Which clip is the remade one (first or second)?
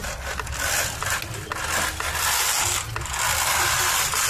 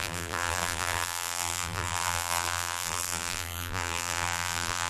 second